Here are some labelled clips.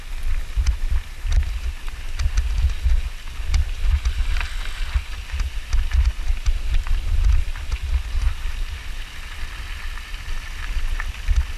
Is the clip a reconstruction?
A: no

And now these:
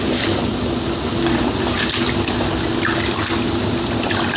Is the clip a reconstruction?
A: no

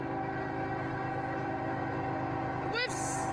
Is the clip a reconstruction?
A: no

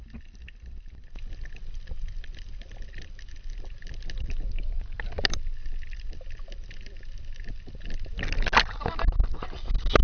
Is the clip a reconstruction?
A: no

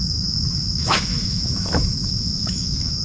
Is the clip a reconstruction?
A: yes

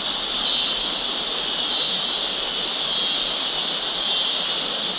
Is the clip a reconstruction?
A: no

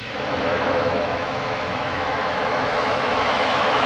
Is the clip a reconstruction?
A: yes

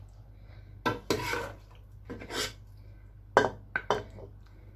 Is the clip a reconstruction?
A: no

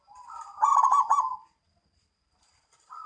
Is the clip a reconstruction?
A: no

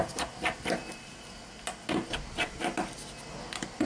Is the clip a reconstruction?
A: no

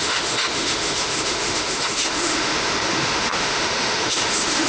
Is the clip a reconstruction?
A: yes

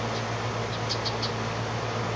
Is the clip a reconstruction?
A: no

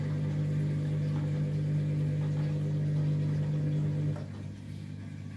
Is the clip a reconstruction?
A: no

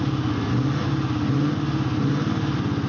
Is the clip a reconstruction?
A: no